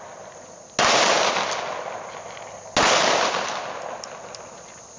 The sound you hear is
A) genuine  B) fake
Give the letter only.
A